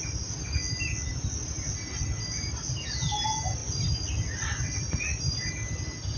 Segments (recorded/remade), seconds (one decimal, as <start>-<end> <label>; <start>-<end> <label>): 0.0-6.2 recorded